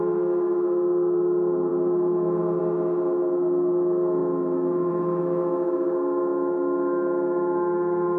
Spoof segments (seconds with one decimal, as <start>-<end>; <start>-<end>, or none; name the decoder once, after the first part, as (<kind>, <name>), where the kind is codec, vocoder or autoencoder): 0.0-8.2 (autoencoder, DAC-VAE)